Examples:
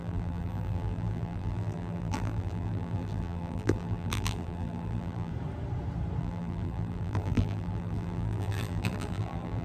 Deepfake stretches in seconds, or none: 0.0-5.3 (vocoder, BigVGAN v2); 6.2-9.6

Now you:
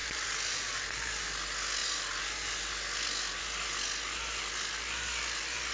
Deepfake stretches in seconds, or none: 0.0-1.0 (vocoder, BigVGAN v2)

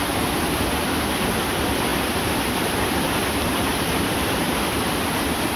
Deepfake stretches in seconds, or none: 3.7-4.5 (vocoder, BigVGAN v2)

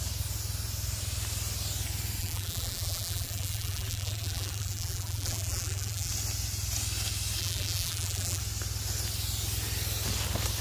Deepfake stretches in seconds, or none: 2.2-6.1 (vocoder, BigVGAN v2); 7.4-8.4

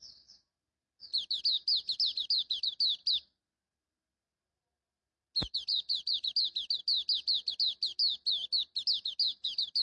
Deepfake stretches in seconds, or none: 5.4-6.3 (vocoder, BigVGAN v2)

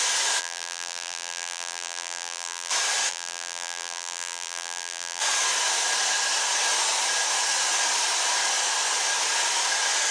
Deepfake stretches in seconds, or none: 0.4-2.7 (vocoder, BigVGAN v2); 3.1-5.2

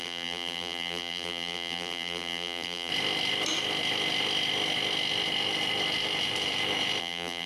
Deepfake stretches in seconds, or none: 0.0-2.9 (vocoder, BigVGAN v2); 7.0-7.5